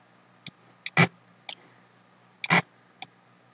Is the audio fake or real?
real